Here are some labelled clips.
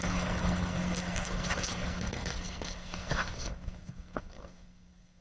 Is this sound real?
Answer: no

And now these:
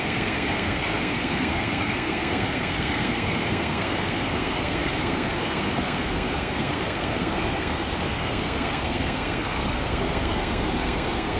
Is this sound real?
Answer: no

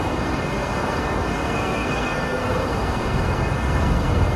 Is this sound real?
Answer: no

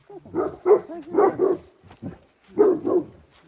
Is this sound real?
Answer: yes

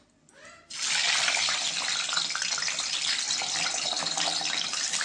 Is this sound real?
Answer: yes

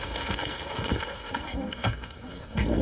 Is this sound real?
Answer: no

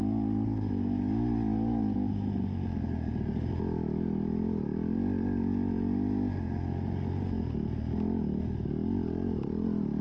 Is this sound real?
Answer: yes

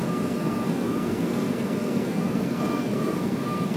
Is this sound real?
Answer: no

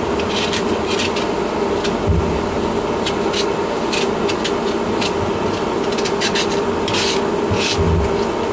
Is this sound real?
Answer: yes